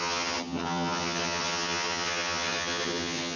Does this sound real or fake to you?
fake